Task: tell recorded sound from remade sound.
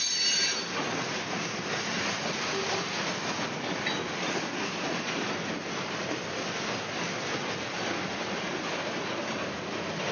recorded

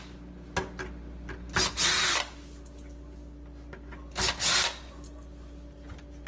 recorded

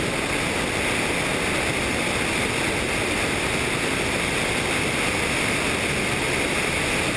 recorded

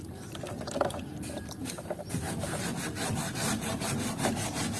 remade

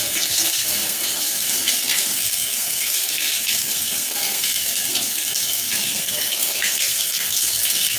remade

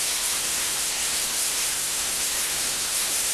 remade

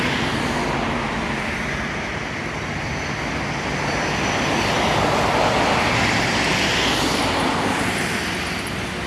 recorded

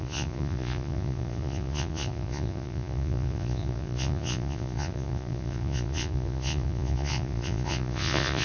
remade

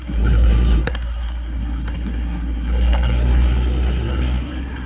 remade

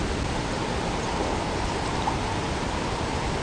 recorded